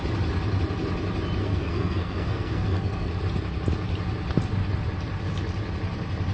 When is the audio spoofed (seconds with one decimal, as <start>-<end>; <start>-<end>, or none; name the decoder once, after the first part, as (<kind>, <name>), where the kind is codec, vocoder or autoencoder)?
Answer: 1.4-3.2 (codec, SNAC)